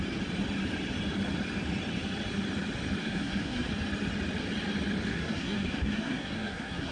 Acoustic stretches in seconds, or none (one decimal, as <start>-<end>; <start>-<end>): 0.0-3.0; 3.7-5.1